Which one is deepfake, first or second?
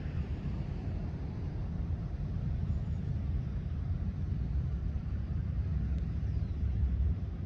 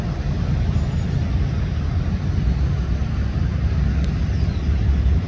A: first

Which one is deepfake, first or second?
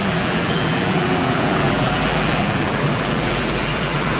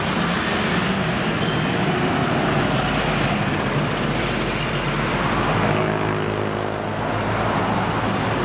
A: first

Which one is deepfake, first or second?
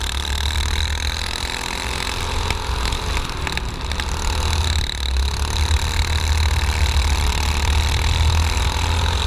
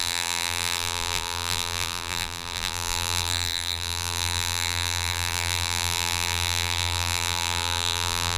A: second